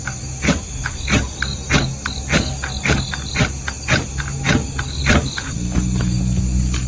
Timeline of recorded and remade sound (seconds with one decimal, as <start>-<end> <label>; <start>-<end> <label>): 0.0-5.0 recorded; 5.0-6.2 remade; 6.2-6.9 recorded